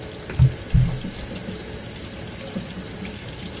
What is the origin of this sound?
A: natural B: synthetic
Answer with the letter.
A